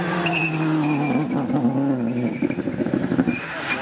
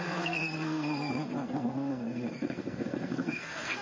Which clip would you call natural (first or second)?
first